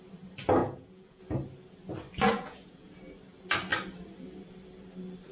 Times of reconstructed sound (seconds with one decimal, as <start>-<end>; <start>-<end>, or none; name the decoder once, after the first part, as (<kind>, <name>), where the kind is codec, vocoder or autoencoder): 0.6-1.2 (vocoder, Vocos); 2.3-2.9